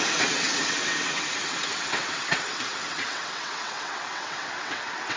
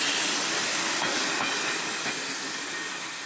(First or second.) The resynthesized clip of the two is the first